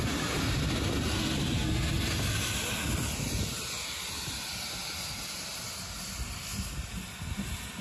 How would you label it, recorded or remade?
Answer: recorded